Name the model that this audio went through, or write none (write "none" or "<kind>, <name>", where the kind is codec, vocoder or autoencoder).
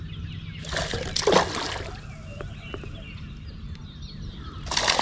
none